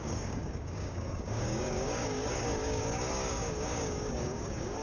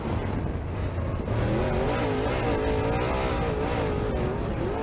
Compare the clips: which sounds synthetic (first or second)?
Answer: first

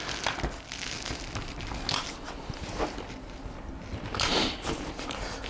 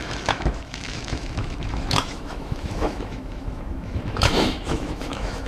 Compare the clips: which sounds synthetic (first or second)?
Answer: second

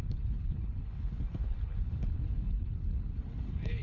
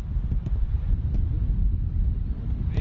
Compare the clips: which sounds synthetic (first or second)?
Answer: first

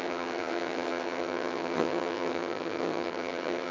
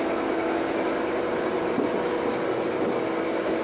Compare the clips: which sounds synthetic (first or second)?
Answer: first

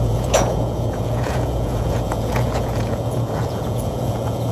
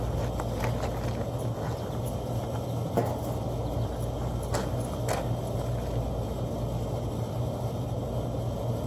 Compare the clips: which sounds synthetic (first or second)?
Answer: first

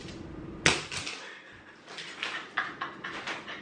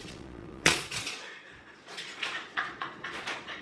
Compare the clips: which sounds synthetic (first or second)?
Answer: second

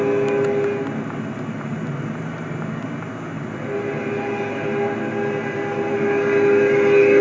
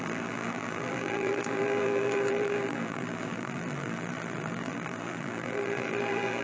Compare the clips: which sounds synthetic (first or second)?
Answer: second